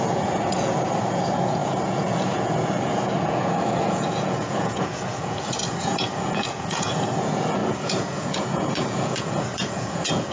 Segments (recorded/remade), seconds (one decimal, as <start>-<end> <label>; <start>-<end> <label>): 0.0-10.3 remade